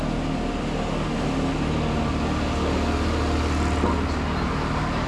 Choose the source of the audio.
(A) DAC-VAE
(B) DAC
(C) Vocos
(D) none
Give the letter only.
D